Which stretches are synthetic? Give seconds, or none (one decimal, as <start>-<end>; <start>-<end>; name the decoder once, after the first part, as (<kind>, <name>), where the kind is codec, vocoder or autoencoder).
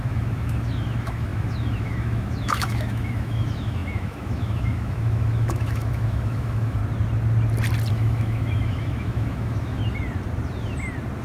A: 0.0-6.8 (autoencoder, DAC-VAE); 7.9-9.8